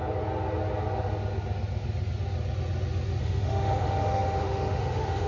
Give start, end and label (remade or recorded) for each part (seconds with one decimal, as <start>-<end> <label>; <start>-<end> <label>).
0.0-3.2 recorded; 3.2-5.3 remade